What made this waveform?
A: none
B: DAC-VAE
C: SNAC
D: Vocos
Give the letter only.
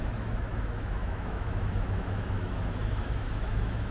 B